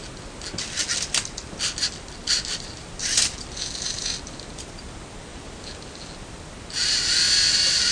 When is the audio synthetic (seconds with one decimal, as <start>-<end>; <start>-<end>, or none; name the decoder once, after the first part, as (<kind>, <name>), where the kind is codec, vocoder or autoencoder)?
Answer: 2.2-4.0 (vocoder, BigVGAN v2); 5.3-6.1